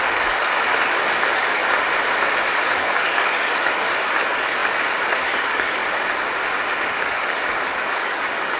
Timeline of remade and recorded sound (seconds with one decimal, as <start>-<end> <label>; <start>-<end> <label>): 0.0-1.6 remade; 1.6-2.5 recorded; 2.5-5.8 remade; 5.8-6.9 recorded; 6.9-8.6 remade